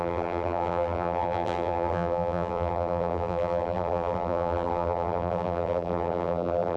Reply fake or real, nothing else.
fake